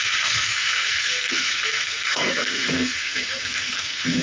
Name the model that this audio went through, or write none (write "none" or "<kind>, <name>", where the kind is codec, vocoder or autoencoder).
codec, SNAC